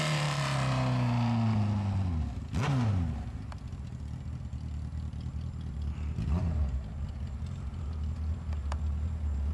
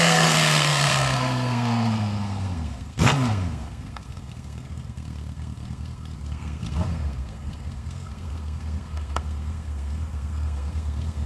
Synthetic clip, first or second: second